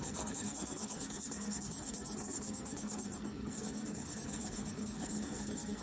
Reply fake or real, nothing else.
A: fake